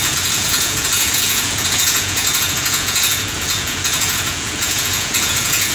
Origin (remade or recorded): remade